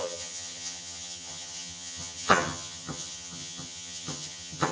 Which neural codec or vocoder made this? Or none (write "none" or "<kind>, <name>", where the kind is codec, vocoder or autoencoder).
vocoder, HiFi-GAN